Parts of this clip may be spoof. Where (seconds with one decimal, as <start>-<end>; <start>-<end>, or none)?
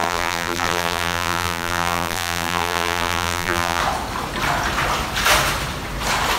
0.0-3.8